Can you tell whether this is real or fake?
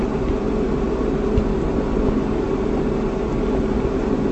real